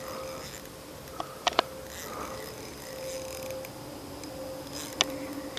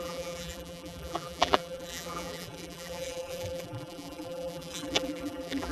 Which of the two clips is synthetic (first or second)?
second